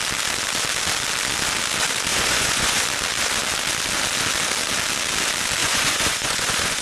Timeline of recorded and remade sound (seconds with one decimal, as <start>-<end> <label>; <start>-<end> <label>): 0.0-2.1 recorded; 2.1-2.8 remade; 2.8-5.6 recorded; 5.6-6.8 remade